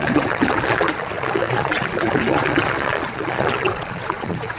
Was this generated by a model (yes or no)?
yes